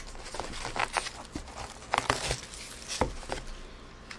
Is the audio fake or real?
real